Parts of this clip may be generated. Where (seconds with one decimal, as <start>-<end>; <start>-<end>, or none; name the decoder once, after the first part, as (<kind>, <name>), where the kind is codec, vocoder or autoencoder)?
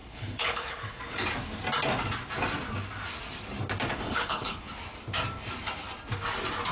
0.0-1.0 (codec, HILCodec); 3.9-4.7